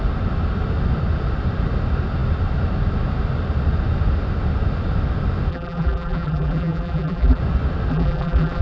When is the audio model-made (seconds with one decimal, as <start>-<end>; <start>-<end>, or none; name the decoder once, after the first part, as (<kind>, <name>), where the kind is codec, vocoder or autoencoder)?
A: 5.5-7.4 (vocoder, BigVGAN v2); 7.9-8.6